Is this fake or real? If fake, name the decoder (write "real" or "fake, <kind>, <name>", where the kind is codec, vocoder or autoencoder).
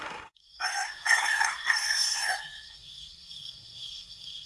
fake, codec, SNAC